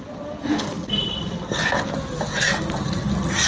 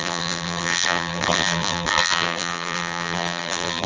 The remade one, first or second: second